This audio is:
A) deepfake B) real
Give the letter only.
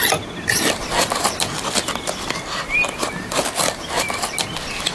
B